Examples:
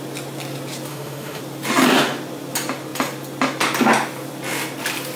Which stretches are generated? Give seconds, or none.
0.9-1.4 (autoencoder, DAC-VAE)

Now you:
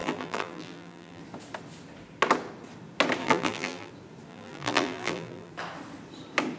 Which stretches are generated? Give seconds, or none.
0.0-1.2 (vocoder, BigVGAN v2); 3.2-3.9; 4.3-5.5

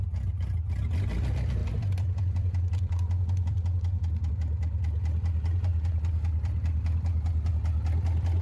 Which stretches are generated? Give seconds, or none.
1.6-4.3 (vocoder, BigVGAN v2); 5.7-7.5

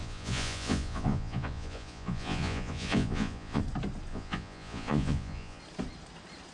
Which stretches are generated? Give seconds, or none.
0.0-3.6 (vocoder, Vocos); 4.1-5.6

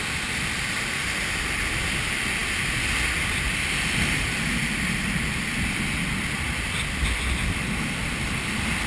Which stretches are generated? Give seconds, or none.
none